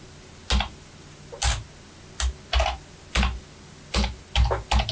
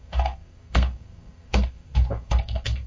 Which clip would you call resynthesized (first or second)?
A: second